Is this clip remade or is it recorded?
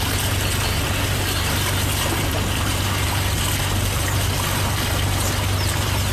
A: recorded